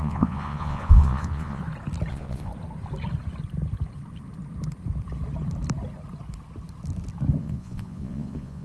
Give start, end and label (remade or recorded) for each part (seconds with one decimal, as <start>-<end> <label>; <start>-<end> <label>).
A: 0.0-1.6 remade; 1.6-2.1 recorded; 2.1-2.5 remade; 2.5-7.4 recorded; 7.4-8.6 remade